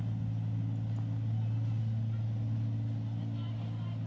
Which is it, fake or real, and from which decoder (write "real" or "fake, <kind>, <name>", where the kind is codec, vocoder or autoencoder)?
real